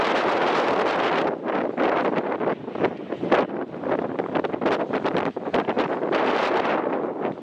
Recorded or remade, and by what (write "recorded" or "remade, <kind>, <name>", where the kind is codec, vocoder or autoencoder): recorded